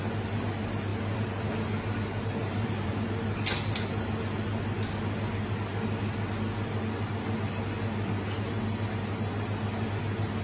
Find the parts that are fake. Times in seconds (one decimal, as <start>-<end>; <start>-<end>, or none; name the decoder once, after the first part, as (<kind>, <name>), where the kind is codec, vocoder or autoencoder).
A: 2.4-2.9 (vocoder, BigVGAN v2)